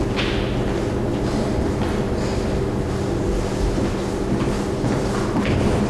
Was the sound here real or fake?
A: real